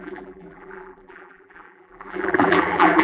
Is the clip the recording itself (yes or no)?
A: no